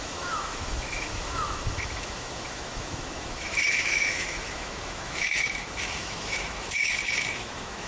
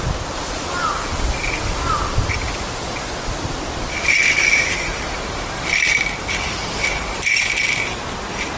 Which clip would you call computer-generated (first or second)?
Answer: first